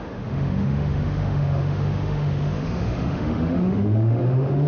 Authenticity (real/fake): fake